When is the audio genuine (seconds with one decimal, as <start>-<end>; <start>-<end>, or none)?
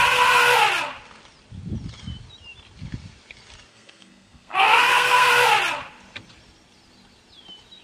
0.0-3.7; 5.3-7.8